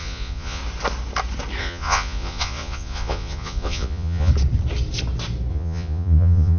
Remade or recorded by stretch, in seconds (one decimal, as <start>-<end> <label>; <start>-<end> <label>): 0.0-0.6 remade; 0.6-1.6 recorded; 1.6-4.3 remade; 4.3-5.5 recorded; 5.5-6.6 remade

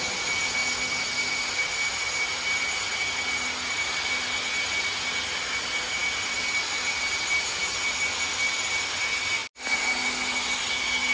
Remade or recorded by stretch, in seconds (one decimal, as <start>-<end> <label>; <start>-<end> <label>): 0.0-11.1 recorded

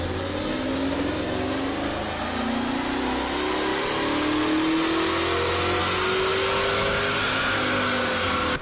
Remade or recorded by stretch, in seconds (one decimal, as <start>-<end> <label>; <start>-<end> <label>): 0.0-8.6 recorded

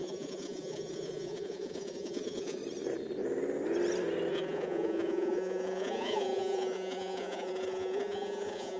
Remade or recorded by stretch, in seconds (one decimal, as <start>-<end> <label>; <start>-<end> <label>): 0.0-2.6 remade; 2.6-4.3 recorded; 4.3-8.8 remade